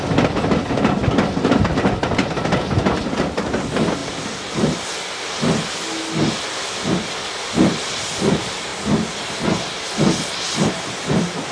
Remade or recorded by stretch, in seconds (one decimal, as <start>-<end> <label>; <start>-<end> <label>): 0.0-11.5 recorded

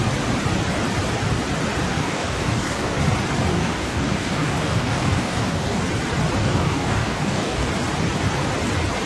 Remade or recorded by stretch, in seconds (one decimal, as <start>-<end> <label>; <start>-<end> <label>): 0.0-1.9 recorded; 1.9-3.0 remade; 3.0-3.5 recorded; 3.5-5.8 remade; 5.8-6.4 recorded; 6.4-7.7 remade; 7.7-9.1 recorded

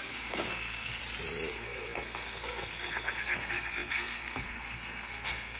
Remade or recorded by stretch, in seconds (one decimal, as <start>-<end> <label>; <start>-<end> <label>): 0.0-1.0 remade; 1.0-1.5 recorded; 1.5-5.6 remade

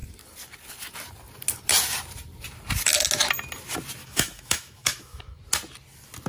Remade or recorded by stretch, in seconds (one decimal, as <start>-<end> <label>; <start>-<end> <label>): 0.0-4.0 recorded; 4.0-5.4 remade; 5.4-6.3 recorded

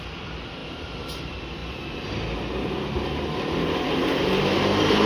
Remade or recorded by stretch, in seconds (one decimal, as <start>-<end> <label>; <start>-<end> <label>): 0.0-5.1 recorded

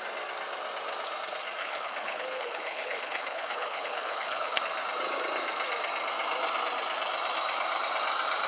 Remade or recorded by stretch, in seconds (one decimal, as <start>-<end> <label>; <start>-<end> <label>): 0.0-1.6 recorded; 1.6-4.6 remade; 4.6-8.5 recorded